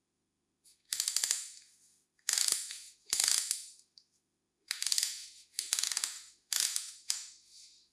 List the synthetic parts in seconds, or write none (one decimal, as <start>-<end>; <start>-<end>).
0.0-7.9